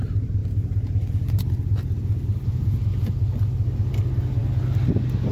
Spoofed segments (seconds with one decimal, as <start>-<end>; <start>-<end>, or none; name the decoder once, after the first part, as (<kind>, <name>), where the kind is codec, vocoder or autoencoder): none